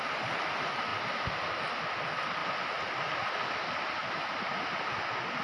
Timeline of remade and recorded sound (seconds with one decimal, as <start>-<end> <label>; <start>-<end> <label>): 0.0-5.4 recorded